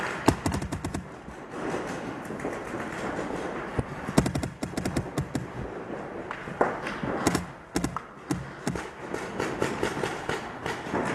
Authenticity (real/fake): real